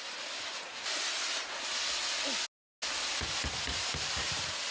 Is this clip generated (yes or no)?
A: no